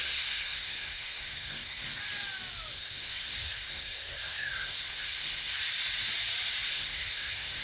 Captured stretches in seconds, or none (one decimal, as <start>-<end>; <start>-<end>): 2.0-2.7; 5.6-6.7